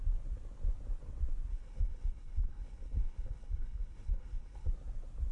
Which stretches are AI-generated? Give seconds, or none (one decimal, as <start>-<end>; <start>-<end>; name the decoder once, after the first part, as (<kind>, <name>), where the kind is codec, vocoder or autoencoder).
1.5-4.7 (codec, HILCodec)